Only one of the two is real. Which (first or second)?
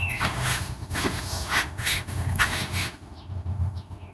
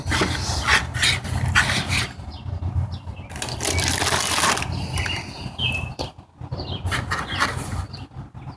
second